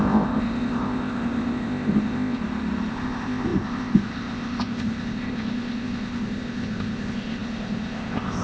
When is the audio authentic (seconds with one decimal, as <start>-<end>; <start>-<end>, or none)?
2.4-2.9